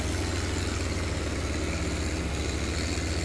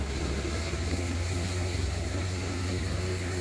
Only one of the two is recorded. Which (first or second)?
first